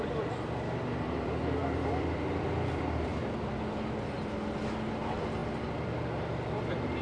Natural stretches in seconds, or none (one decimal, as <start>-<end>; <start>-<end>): 3.1-4.9